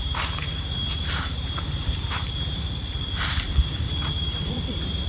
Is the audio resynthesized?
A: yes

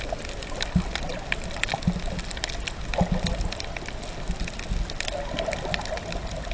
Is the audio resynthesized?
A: no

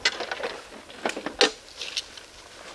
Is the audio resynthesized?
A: no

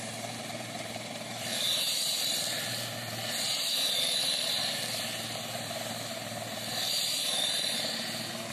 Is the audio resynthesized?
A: yes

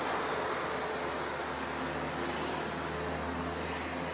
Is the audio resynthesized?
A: no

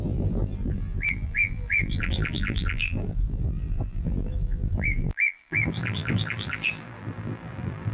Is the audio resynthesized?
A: yes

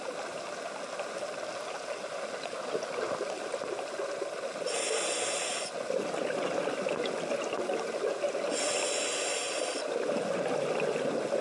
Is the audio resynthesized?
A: no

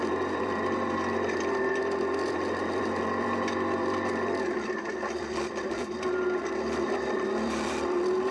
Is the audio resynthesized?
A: yes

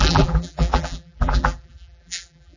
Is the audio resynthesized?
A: yes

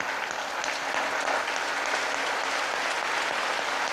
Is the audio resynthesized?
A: no